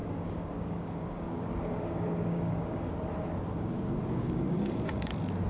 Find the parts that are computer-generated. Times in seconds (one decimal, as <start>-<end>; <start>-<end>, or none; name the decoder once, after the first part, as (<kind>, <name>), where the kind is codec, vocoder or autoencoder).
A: 0.0-2.9 (codec, DAC); 3.5-5.1